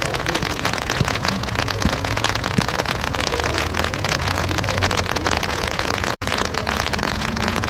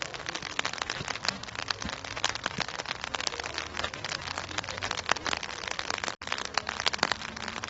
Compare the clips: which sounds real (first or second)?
second